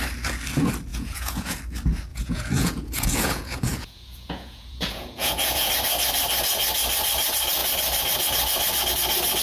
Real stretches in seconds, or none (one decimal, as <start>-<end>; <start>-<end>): 0.0-0.9; 1.6-2.1; 5.7-9.4